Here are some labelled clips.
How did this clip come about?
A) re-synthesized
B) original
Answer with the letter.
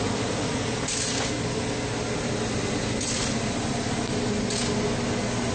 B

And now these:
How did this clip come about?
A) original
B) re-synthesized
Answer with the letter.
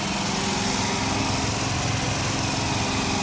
A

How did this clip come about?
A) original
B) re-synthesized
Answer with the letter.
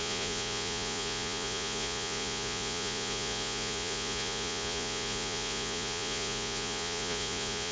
B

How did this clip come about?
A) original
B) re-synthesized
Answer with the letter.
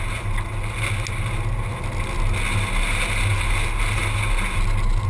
A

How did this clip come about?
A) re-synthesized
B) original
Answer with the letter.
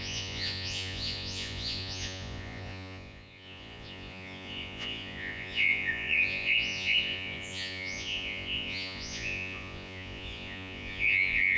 A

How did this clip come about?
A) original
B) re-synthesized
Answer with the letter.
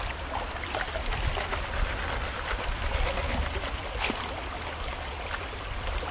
A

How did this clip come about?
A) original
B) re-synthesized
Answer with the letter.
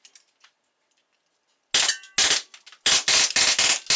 A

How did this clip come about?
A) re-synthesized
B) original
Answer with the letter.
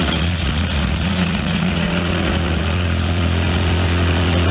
A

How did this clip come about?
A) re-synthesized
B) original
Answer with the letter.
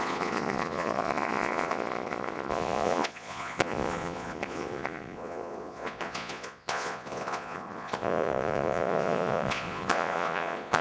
A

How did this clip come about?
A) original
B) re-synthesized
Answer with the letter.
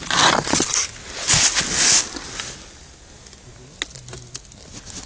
A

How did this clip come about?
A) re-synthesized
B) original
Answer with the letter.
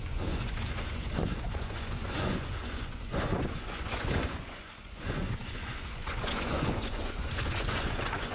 A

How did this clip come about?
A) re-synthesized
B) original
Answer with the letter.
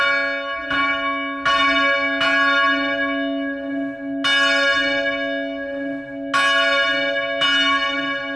B